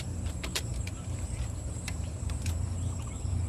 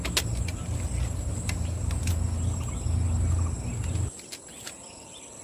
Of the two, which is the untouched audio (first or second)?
second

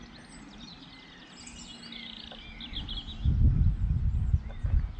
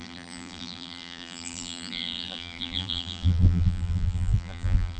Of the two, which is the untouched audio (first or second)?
first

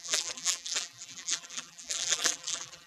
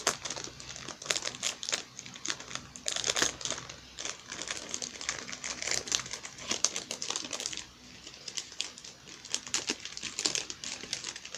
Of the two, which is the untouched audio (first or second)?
second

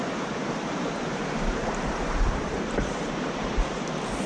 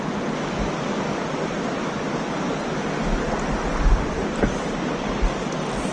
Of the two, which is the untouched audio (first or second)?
second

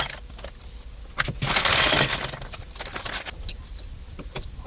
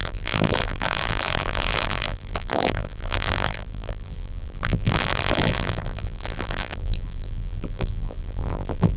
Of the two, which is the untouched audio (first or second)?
first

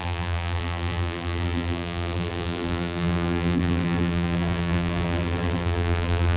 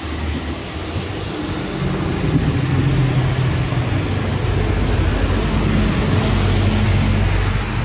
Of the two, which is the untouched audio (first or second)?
second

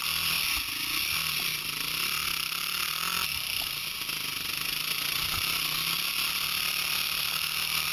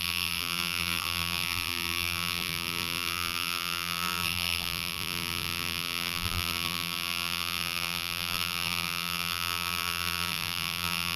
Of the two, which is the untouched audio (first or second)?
first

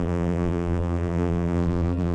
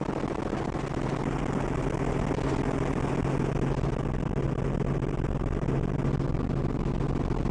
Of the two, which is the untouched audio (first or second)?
second